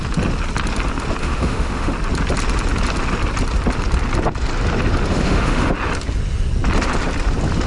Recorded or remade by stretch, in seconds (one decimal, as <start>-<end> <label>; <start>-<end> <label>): 0.0-1.2 recorded; 1.2-1.9 remade; 1.9-5.1 recorded; 5.1-5.7 remade; 5.7-7.7 recorded